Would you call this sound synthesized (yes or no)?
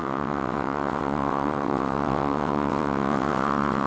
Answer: yes